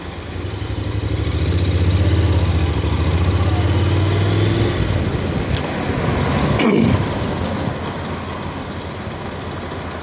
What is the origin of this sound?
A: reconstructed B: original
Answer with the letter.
B